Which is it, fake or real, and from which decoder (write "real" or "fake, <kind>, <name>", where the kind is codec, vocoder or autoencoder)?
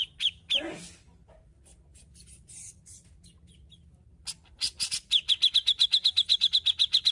real